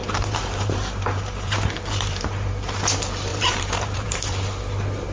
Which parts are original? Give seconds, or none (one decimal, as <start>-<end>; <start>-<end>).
2.5-3.3; 4.6-5.1